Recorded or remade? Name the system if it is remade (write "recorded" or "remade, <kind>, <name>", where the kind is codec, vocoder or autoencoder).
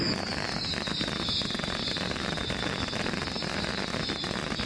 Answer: recorded